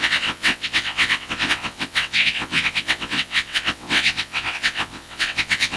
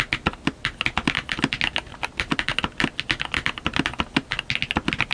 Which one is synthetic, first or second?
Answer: first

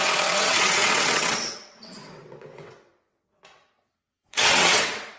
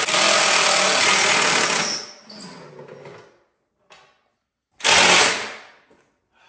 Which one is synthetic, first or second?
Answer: first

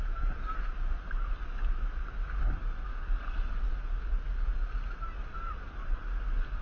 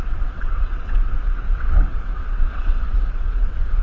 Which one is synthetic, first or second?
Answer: second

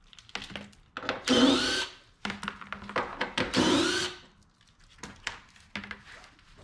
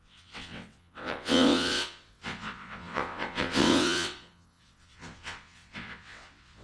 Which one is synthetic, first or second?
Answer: second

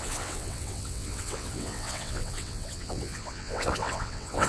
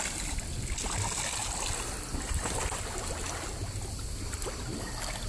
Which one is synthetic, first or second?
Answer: first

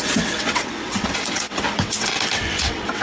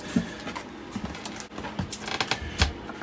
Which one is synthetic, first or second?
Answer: first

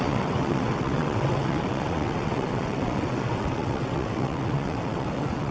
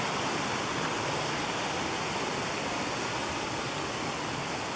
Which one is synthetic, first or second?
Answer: first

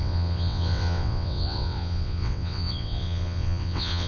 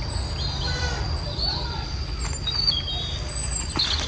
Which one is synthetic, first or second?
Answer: first